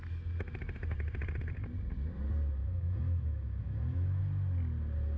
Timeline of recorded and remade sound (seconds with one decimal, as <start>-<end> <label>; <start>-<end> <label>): 0.0-2.6 recorded; 2.6-4.2 remade; 4.2-5.2 recorded